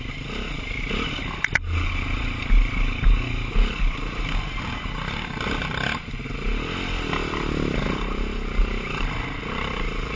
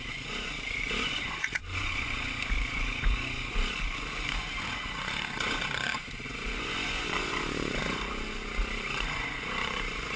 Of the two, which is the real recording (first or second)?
first